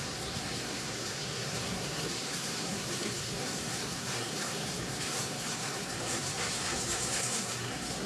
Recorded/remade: remade